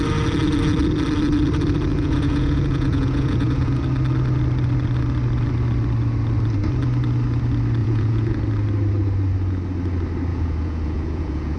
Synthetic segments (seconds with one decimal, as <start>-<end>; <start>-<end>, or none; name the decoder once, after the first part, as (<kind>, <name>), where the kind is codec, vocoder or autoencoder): 1.9-3.8 (vocoder, Vocos); 7.8-8.4; 10.3-11.6